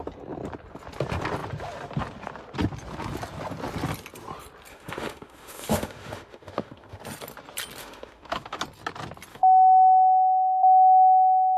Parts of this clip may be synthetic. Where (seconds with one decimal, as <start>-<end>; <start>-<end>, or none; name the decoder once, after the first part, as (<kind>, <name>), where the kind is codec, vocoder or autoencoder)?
4.7-7.0 (autoencoder, DAC-VAE); 7.8-8.6; 9.3-11.6